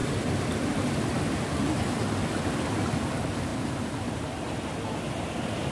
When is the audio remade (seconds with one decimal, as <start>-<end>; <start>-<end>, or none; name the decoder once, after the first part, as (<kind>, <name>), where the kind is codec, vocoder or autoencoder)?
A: 3.5-4.3 (vocoder, BigVGAN v2)